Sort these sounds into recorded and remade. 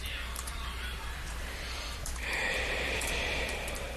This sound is remade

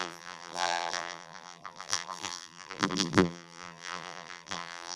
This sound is remade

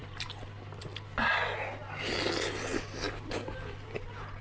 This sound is recorded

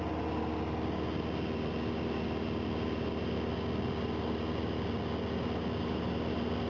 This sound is recorded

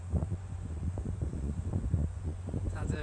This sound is remade